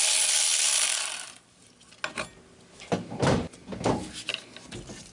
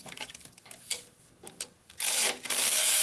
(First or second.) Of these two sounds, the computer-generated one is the second